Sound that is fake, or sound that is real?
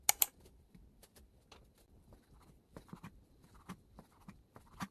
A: real